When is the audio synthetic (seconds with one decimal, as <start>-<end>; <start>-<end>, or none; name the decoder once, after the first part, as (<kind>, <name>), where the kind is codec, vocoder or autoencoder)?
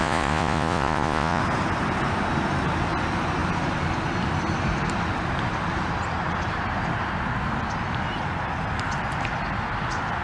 0.0-1.4 (vocoder, Vocos)